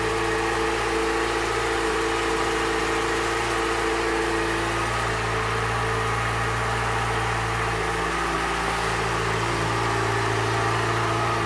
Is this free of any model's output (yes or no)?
yes